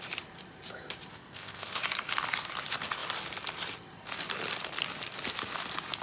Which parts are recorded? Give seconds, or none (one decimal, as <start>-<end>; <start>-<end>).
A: 0.0-1.1; 1.8-6.0